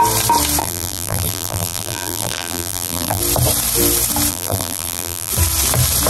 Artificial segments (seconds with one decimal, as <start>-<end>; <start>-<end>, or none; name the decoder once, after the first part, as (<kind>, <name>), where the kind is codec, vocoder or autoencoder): 0.6-3.2 (vocoder, BigVGAN v2); 4.3-5.3